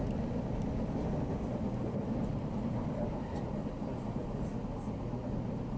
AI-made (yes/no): no